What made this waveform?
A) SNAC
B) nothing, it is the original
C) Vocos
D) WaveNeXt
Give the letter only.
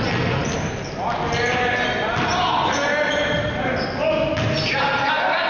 B